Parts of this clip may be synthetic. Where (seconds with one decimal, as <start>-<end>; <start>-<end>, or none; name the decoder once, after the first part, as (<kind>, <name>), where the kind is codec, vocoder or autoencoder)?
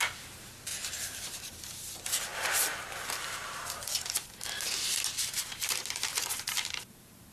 0.0-7.3 (vocoder, BigVGAN v2)